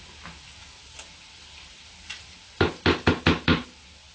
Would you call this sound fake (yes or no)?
no